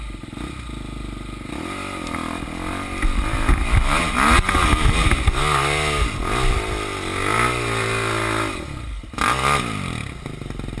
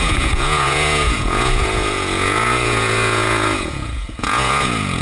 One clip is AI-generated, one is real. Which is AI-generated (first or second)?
second